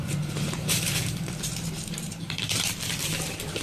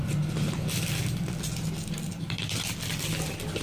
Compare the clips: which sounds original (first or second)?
second